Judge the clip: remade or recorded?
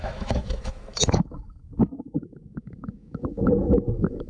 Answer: remade